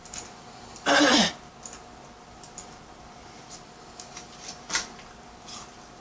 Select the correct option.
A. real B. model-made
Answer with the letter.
A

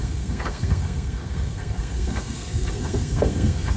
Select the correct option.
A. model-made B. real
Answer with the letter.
A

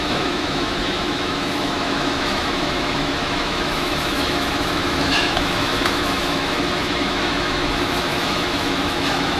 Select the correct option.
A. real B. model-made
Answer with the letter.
B